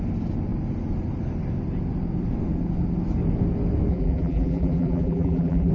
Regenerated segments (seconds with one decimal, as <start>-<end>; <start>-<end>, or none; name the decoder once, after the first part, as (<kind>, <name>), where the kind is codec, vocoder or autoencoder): 3.9-5.7 (vocoder, BigVGAN v2)